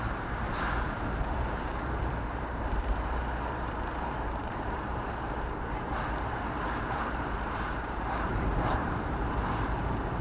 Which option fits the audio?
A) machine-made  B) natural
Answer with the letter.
A